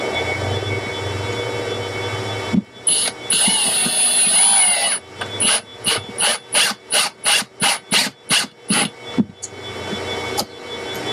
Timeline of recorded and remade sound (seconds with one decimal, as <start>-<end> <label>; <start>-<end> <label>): 0.0-5.7 recorded; 5.7-7.4 remade; 7.4-11.1 recorded